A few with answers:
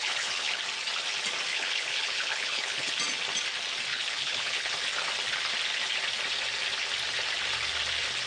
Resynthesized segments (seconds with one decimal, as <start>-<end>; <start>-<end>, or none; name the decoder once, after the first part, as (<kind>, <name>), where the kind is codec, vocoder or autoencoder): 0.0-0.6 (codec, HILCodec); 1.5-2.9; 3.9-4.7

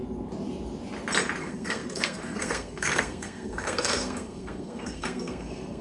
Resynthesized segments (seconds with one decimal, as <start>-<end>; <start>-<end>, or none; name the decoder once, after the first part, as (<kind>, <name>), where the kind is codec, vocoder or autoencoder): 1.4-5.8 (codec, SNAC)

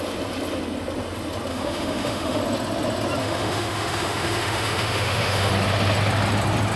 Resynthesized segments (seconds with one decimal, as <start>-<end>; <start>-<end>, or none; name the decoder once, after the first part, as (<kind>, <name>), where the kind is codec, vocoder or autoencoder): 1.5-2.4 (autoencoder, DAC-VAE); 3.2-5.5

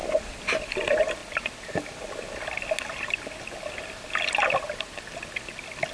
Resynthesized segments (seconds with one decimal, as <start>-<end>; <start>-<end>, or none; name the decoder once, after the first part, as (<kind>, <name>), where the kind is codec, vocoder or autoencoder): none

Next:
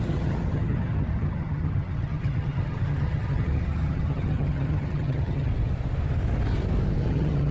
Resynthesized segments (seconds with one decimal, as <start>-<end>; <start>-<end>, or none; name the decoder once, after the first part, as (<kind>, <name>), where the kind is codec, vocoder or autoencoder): 0.0-5.5 (vocoder, HiFi-GAN); 7.0-7.5

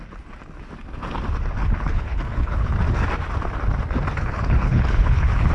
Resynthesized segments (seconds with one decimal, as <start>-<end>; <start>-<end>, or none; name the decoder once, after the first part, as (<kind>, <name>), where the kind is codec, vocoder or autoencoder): 1.6-2.7 (codec, HILCodec); 4.2-5.5

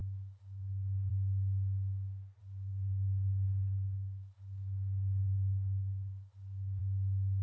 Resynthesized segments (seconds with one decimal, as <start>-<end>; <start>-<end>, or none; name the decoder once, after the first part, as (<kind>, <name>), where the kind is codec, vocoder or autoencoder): 0.0-1.1 (codec, HILCodec); 2.4-6.8